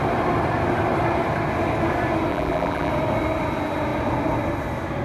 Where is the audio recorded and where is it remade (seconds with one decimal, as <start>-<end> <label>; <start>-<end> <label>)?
0.0-2.3 recorded; 2.3-2.9 remade; 2.9-5.0 recorded